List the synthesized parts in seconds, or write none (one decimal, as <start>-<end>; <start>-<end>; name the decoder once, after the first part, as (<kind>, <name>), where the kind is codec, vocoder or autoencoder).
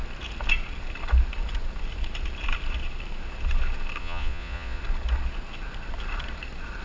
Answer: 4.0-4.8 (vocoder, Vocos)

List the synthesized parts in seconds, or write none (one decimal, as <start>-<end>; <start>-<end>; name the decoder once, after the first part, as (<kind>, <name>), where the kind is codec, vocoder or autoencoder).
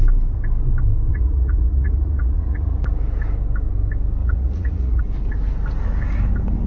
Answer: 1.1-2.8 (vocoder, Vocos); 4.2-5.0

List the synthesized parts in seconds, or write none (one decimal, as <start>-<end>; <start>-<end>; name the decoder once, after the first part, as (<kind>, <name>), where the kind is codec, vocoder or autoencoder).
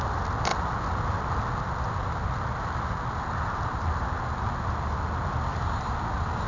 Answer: none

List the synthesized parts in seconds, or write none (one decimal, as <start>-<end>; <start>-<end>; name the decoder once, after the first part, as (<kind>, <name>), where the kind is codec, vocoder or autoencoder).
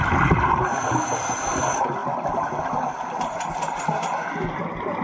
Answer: none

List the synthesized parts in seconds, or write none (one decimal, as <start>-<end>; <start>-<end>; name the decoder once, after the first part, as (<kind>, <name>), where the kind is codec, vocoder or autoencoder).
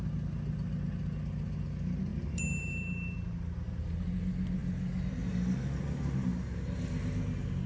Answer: none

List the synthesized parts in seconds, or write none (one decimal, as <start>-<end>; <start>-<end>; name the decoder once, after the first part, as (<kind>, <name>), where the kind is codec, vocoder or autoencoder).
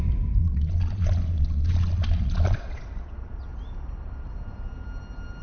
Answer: 0.4-3.4 (vocoder, Vocos)